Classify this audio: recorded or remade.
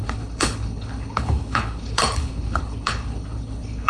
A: remade